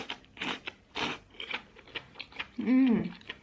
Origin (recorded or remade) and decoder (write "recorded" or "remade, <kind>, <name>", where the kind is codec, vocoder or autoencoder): recorded